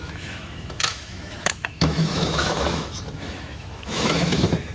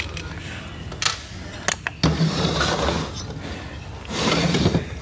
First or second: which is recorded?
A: second